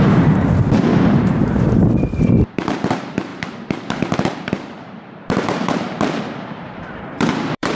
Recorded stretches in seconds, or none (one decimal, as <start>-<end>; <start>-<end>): 0.9-1.4